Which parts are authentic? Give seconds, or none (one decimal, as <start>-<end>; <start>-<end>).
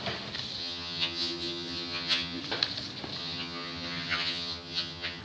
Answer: 0.0-0.6; 2.4-3.2